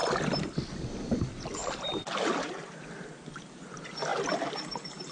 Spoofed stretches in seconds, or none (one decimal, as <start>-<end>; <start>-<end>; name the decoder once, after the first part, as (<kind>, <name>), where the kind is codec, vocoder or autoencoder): 0.0-0.6 (vocoder, BigVGAN v2); 1.6-2.5